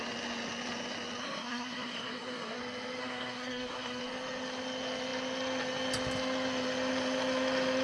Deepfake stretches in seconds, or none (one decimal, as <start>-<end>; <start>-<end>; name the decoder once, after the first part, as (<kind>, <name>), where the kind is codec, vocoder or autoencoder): 1.2-2.6 (codec, SNAC); 3.0-4.0